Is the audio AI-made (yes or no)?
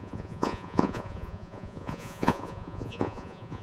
yes